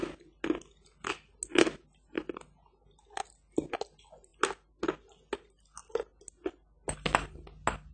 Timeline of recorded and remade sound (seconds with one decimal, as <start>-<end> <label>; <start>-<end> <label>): 0.0-7.9 recorded